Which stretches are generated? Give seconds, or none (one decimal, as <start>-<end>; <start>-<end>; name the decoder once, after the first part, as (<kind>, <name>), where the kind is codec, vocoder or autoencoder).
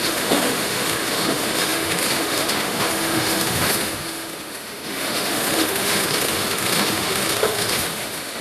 0.0-8.4 (autoencoder, DAC-VAE)